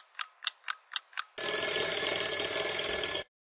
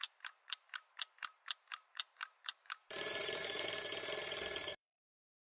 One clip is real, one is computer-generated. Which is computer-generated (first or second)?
second